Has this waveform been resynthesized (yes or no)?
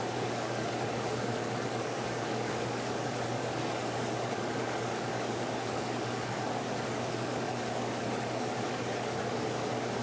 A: yes